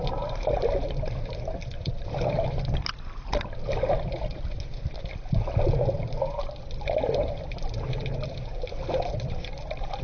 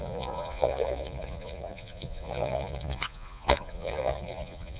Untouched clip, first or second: first